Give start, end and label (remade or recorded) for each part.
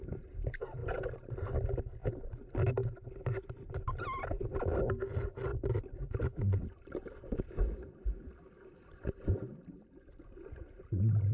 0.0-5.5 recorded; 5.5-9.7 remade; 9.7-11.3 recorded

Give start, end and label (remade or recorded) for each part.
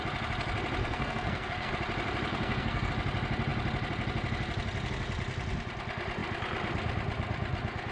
0.0-0.8 recorded; 0.8-1.7 remade; 1.7-2.3 recorded; 2.3-2.9 remade; 2.9-7.9 recorded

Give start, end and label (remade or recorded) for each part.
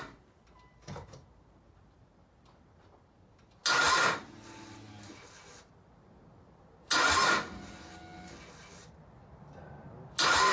0.0-10.5 recorded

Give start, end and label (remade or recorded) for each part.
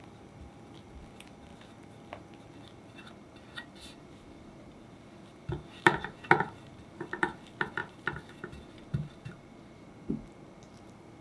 0.0-11.2 recorded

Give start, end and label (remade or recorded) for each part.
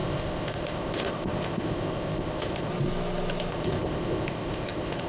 0.0-2.7 remade; 2.7-3.5 recorded; 3.5-5.1 remade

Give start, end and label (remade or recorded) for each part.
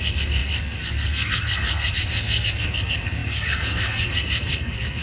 0.0-5.0 remade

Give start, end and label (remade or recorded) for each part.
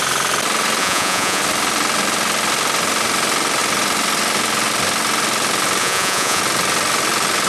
0.0-0.8 recorded; 0.8-1.4 remade; 1.4-5.8 recorded; 5.8-6.4 remade; 6.4-7.5 recorded